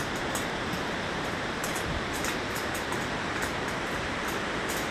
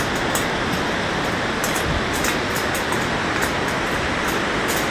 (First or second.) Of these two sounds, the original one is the second